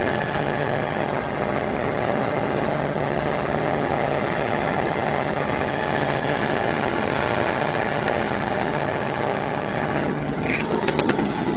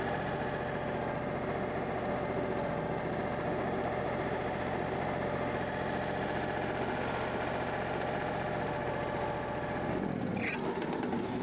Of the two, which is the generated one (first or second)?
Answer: first